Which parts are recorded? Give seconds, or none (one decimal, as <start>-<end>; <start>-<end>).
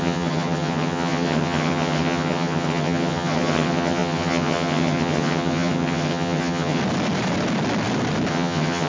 6.8-8.3